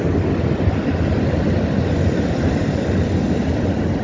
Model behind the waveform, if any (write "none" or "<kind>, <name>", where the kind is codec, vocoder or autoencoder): none